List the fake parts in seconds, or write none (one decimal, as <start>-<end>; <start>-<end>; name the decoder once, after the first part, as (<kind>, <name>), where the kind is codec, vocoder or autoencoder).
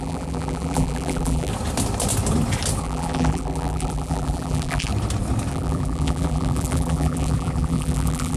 0.0-1.5 (vocoder, BigVGAN v2); 2.8-4.9; 5.5-8.4